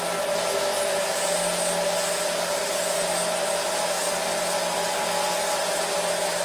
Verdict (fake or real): real